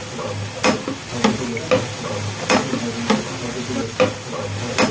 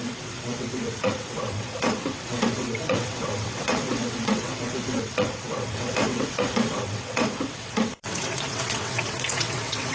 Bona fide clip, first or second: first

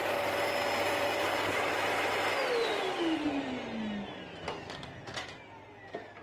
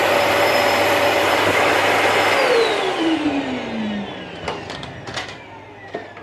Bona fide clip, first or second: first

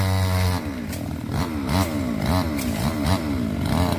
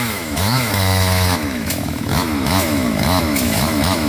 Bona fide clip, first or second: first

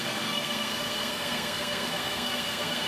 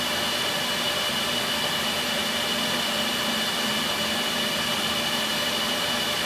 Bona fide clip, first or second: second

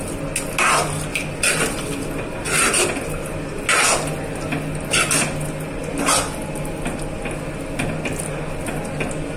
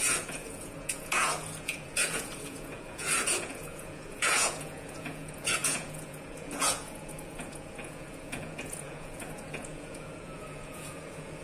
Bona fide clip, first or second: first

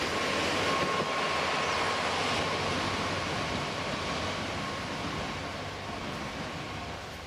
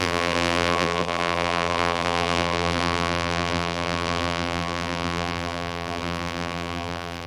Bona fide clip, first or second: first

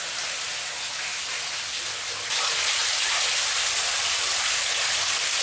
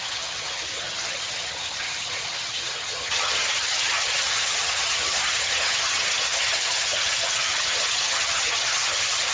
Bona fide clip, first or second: first